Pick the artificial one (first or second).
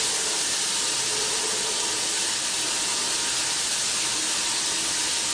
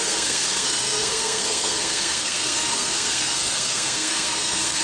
second